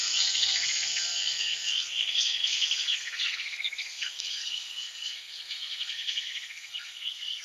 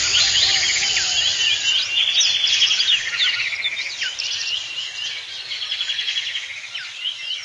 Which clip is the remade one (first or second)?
first